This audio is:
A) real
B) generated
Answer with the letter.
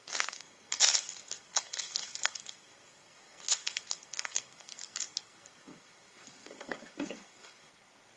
B